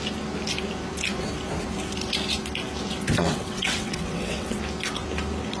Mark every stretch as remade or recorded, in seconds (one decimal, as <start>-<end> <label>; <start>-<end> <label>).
0.0-3.2 recorded; 3.2-4.6 remade; 4.6-5.6 recorded